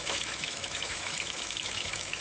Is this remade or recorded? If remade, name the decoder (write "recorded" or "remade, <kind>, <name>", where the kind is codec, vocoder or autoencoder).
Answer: remade, autoencoder, DAC-VAE